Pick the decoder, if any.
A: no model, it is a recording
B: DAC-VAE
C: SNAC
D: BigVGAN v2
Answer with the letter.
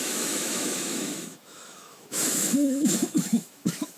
B